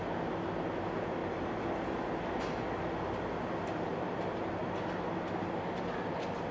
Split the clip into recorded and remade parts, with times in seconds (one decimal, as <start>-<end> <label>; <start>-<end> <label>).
0.0-6.5 recorded